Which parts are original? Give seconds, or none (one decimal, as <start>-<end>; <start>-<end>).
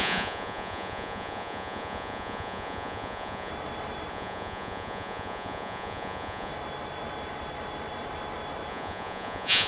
3.5-4.1; 6.5-8.7